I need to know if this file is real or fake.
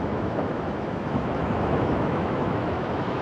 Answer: fake